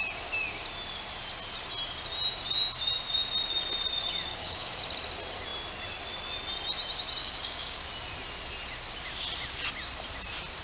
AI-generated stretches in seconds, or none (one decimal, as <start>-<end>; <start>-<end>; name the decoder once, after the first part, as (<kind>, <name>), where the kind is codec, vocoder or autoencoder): 4.3-4.8 (codec, DAC); 7.2-7.9